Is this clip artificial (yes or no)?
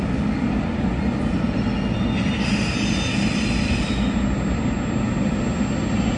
no